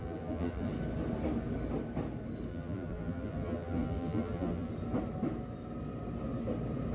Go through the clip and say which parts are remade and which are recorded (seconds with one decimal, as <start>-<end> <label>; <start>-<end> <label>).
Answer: 0.0-0.7 remade; 0.7-2.5 recorded; 2.5-4.7 remade; 4.7-6.9 recorded